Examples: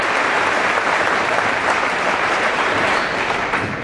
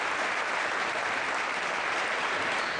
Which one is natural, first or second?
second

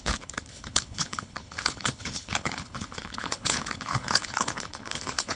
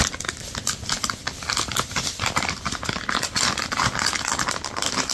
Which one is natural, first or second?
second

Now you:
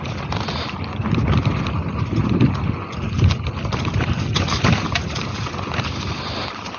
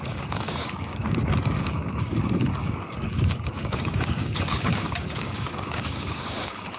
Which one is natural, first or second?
first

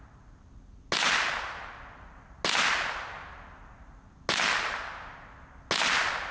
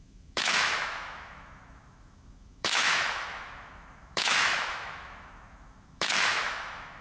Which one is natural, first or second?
first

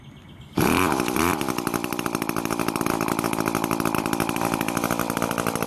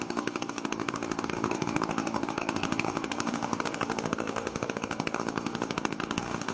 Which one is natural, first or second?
first